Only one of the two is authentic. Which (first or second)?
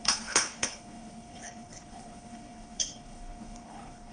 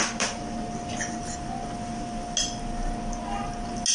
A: second